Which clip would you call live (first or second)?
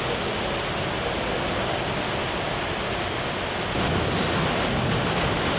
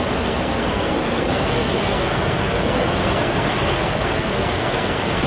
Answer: first